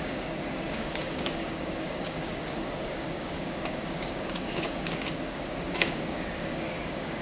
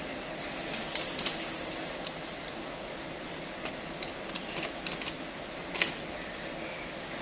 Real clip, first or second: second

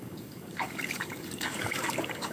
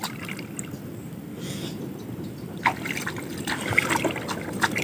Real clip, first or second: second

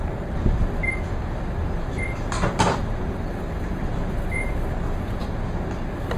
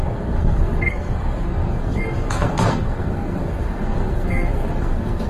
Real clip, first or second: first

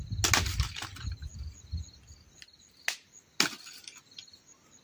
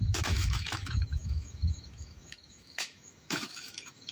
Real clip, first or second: first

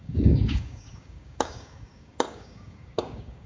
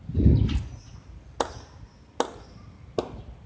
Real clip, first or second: second